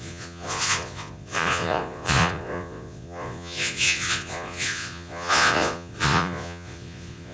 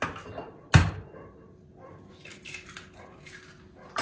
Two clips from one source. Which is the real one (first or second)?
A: second